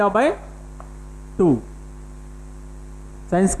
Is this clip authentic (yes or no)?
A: yes